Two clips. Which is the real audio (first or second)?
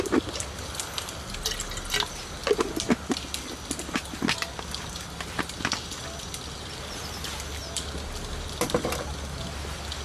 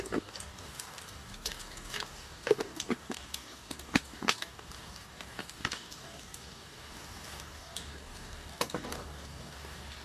first